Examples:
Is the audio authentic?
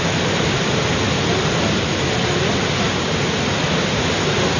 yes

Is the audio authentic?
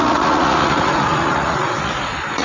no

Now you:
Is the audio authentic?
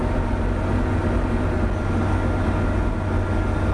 yes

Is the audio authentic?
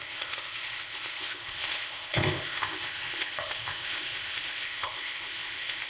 no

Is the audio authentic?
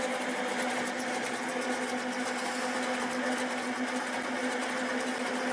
yes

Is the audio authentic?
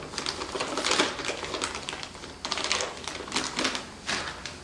yes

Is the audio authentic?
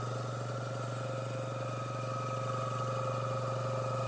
yes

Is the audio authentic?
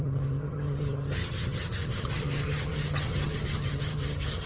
no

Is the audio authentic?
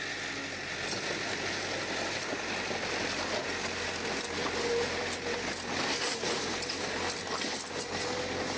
yes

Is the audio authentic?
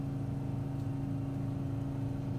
yes